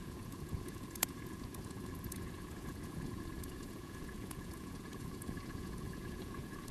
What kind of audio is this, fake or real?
fake